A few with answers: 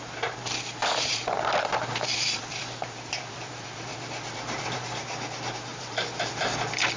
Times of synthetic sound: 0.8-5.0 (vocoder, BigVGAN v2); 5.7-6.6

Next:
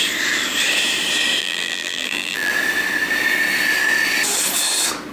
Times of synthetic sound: 1.4-2.5 (vocoder, BigVGAN v2)

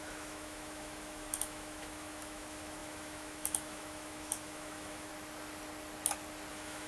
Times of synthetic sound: 0.0-5.1 (autoencoder, DAC-VAE); 6.5-6.9